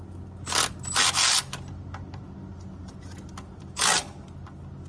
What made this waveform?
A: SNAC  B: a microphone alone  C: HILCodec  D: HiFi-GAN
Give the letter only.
B